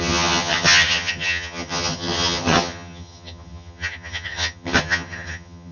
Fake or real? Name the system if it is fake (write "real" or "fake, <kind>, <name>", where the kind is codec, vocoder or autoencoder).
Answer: fake, vocoder, HiFi-GAN